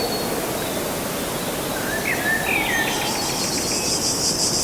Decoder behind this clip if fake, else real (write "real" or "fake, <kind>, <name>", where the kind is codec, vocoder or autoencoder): real